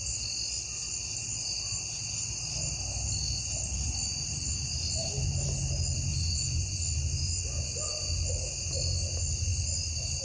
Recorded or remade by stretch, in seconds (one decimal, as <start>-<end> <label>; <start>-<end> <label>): 0.0-6.1 recorded; 6.1-6.8 remade; 6.8-10.2 recorded